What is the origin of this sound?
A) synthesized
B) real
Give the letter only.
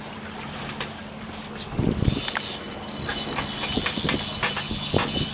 B